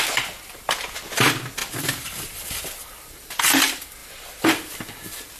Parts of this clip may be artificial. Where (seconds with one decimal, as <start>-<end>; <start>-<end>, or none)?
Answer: 1.6-3.4; 4.0-5.4